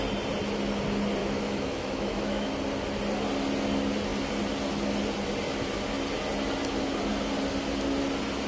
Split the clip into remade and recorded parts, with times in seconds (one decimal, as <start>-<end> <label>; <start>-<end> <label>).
0.0-1.2 recorded; 1.2-2.5 remade; 2.5-8.5 recorded